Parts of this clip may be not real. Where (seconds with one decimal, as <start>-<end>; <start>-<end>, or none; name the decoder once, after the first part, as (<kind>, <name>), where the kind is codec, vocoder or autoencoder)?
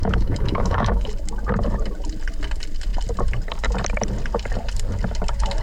0.0-1.1 (autoencoder, DAC-VAE)